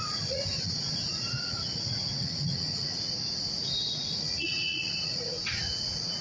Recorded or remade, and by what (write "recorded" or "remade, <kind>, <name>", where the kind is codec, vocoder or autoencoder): remade, vocoder, Vocos